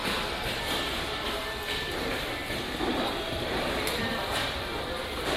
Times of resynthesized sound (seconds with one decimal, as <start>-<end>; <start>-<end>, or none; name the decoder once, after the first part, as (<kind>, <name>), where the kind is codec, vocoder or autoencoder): none